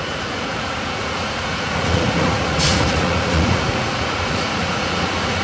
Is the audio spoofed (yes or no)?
yes